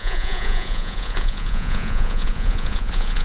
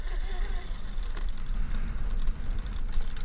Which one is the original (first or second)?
second